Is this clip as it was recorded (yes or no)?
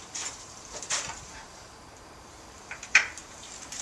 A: no